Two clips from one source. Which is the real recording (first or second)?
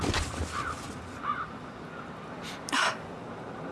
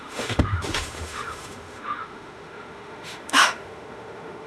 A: first